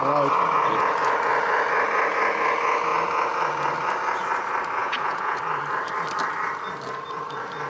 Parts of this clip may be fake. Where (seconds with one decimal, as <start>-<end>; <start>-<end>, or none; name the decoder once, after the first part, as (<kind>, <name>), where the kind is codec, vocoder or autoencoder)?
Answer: 4.8-5.4 (vocoder, Vocos)